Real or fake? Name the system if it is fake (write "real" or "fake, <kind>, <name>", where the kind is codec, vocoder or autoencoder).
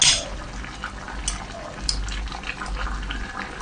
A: real